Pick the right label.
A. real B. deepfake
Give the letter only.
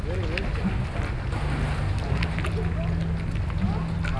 A